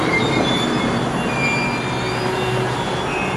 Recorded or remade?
recorded